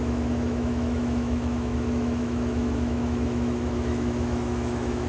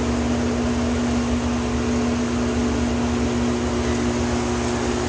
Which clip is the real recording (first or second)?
second